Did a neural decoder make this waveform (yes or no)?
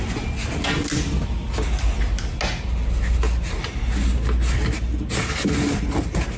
no